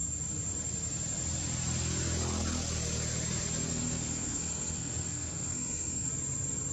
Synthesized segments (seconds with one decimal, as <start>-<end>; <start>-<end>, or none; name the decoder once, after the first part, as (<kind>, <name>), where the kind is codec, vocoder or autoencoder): 3.7-6.1 (codec, SNAC)